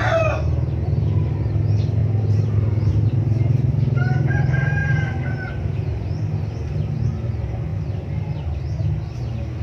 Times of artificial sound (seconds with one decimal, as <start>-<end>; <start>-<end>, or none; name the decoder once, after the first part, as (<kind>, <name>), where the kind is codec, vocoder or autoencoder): none